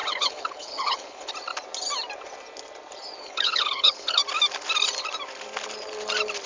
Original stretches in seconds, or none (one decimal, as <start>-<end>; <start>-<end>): 1.3-3.2; 4.2-6.5